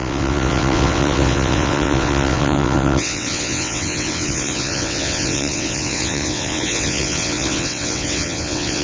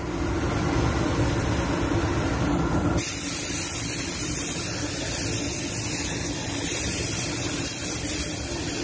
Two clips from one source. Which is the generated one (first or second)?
first